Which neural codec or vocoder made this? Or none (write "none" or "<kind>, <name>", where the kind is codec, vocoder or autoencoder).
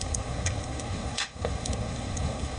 codec, SNAC